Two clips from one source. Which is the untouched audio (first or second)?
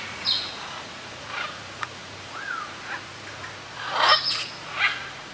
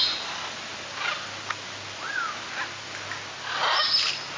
second